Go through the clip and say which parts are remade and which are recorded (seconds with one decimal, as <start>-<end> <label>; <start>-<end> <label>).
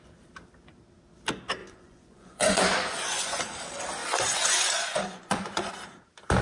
0.0-1.6 recorded; 1.6-3.4 remade; 3.4-4.0 recorded; 4.0-5.7 remade; 5.7-6.4 recorded